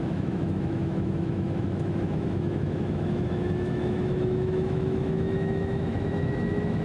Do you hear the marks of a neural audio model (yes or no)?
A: yes